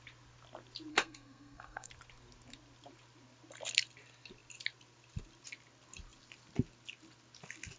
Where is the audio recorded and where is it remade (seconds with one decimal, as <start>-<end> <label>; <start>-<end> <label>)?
0.0-0.9 recorded; 0.9-1.9 remade; 1.9-7.8 recorded